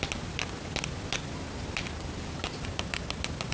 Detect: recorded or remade recorded